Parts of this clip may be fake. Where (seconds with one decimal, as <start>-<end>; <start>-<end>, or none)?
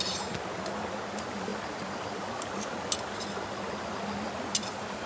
none